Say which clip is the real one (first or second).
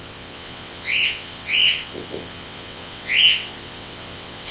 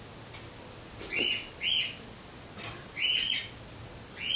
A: second